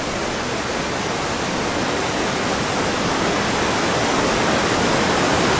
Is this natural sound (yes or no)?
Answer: yes